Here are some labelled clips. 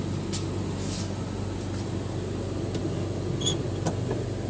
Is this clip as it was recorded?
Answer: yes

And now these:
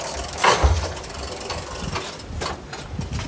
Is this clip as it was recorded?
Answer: yes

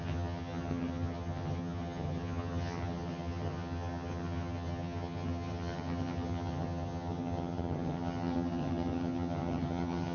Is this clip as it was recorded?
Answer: no